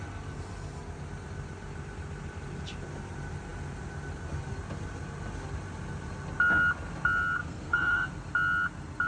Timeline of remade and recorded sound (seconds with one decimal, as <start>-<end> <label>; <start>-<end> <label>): 0.0-7.4 recorded; 7.4-8.1 remade; 8.1-9.1 recorded